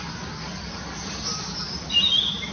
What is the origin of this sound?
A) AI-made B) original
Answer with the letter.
B